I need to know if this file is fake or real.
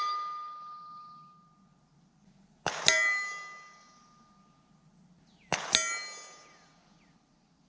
real